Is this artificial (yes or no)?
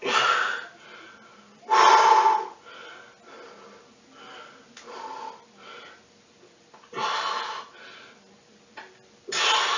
no